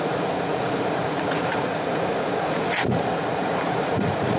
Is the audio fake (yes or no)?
yes